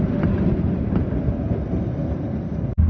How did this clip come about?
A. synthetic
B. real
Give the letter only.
B